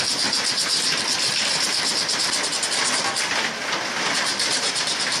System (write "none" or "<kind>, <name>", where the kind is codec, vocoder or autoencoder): none